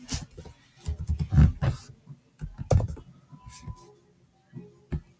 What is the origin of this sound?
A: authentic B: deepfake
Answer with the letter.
A